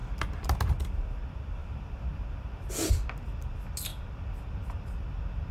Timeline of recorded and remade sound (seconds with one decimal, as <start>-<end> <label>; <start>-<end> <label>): 0.0-1.6 recorded; 1.6-2.7 remade; 2.7-5.5 recorded